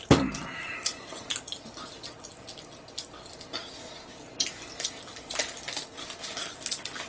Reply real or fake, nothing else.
real